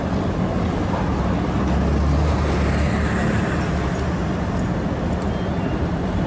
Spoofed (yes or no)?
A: no